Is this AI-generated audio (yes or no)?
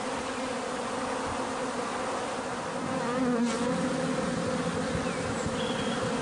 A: no